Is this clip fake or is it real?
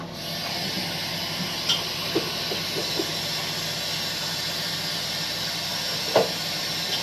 real